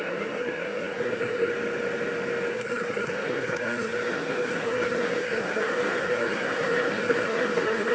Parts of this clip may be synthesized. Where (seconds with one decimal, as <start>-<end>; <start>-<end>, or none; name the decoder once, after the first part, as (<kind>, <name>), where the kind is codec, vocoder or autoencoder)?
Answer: 0.0-1.5 (codec, SNAC); 2.5-7.9

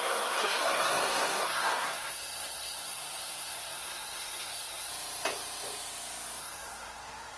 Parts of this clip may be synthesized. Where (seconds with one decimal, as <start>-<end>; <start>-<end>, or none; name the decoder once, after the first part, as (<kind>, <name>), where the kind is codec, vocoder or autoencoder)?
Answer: 0.0-4.9 (codec, SNAC); 6.4-7.4

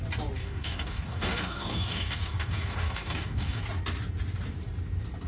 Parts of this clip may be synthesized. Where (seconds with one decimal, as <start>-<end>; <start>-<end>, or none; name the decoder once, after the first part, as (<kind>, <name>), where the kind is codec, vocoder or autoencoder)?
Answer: 0.4-3.6 (codec, DAC)

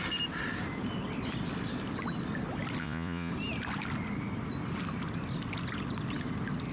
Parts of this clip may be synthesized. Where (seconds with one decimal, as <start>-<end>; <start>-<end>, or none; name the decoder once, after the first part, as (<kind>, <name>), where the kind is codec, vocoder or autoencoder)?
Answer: 2.8-3.3 (vocoder, Vocos)

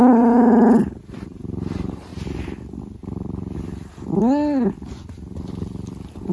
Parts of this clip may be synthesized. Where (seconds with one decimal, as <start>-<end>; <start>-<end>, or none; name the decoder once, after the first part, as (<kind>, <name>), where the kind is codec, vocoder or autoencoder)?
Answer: 0.0-0.5 (vocoder, BigVGAN v2); 1.0-2.1

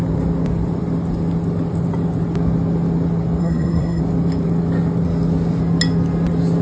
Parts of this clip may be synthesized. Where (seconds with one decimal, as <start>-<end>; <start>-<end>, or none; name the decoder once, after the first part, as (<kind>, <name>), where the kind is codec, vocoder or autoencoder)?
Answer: 3.4-4.0 (codec, SNAC)

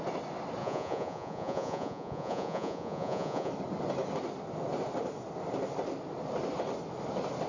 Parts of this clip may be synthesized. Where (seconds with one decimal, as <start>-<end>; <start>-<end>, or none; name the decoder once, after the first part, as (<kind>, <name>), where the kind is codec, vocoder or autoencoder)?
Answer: 0.6-3.5 (vocoder, Vocos)